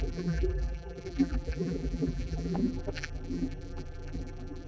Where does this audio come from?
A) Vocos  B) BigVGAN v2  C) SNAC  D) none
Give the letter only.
B